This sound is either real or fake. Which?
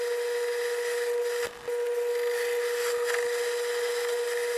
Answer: real